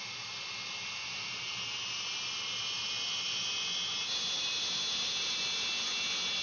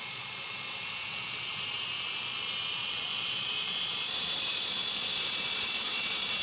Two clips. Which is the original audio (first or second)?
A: first